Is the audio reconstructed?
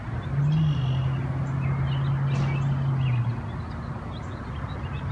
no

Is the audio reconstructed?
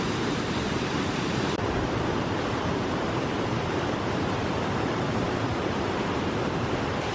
yes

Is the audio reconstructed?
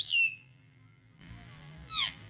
yes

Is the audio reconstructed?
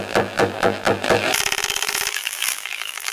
yes